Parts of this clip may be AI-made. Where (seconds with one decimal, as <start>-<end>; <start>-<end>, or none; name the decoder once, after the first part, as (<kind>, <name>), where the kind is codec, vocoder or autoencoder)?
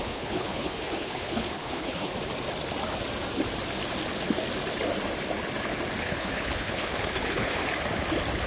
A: 0.0-2.1 (codec, HILCodec); 6.0-7.6